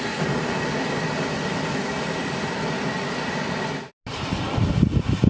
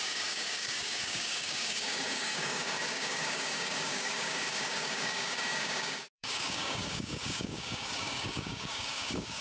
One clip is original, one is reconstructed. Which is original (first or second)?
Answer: first